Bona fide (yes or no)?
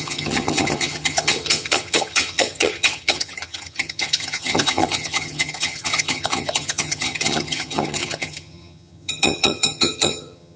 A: no